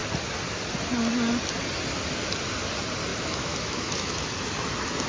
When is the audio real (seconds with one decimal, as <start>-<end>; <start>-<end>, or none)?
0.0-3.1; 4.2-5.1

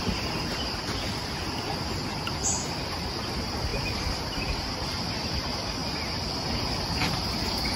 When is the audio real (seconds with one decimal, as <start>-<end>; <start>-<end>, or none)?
0.0-7.8

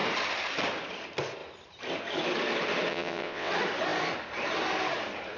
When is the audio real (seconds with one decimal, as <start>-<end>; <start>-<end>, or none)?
0.0-2.9; 3.5-5.4

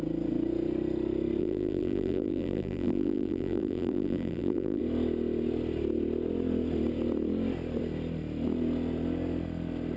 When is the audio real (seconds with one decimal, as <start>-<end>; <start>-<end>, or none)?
0.0-1.4; 4.8-10.0

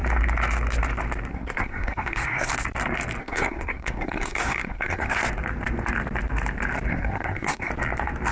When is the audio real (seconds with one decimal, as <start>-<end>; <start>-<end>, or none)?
0.0-1.3; 2.5-3.2; 5.2-6.9; 7.7-8.3

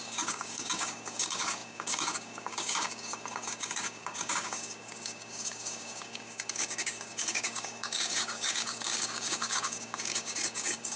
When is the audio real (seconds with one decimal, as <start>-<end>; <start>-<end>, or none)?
none

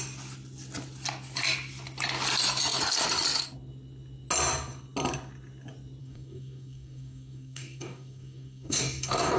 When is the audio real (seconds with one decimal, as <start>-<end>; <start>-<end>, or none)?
0.0-6.0

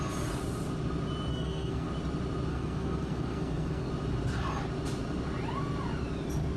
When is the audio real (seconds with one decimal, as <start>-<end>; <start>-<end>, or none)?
0.0-1.3; 1.9-2.5; 3.9-6.6